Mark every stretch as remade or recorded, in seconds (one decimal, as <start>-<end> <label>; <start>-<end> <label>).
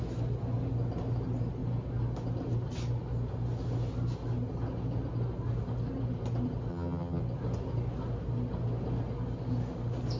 0.0-6.7 recorded; 6.7-7.2 remade; 7.2-10.2 recorded